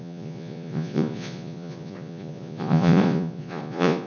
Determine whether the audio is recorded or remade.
remade